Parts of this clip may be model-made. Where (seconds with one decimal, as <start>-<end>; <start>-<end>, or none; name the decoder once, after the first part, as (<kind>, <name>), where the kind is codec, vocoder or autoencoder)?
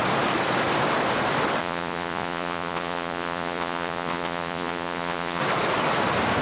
1.6-5.4 (vocoder, Vocos)